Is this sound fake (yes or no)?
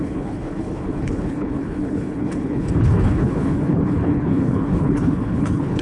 yes